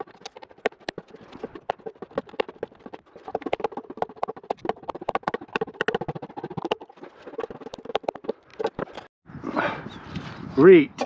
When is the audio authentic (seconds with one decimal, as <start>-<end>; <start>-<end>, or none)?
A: 0.0-11.1